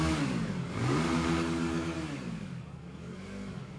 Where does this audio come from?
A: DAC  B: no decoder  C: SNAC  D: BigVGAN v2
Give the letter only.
A